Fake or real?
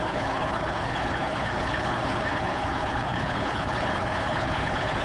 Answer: fake